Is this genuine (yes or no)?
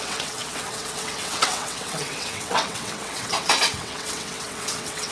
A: no